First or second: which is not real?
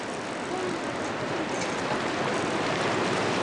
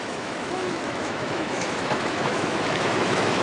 second